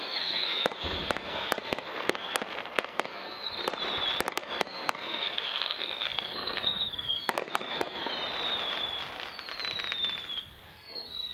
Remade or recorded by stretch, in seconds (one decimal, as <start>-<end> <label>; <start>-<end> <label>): 0.0-3.6 remade; 3.6-4.3 recorded; 4.3-8.1 remade; 8.1-10.4 recorded; 10.4-11.3 remade